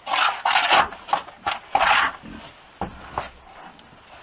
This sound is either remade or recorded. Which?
recorded